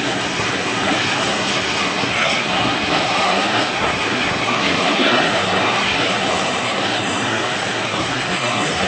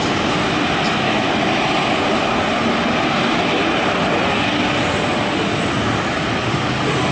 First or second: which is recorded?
second